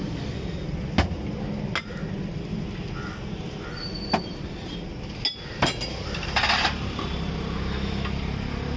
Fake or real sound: real